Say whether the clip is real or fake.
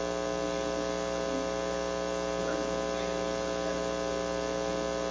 real